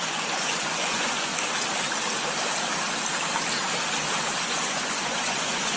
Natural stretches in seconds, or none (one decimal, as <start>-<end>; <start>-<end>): 1.3-4.4